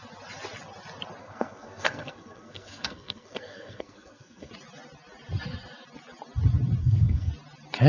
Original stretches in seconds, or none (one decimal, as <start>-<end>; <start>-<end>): 0.0-1.2; 4.5-6.8; 7.3-7.9